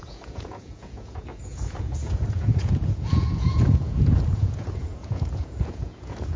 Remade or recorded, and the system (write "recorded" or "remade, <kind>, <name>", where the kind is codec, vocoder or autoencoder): remade, vocoder, Vocos